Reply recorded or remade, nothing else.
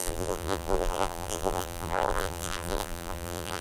remade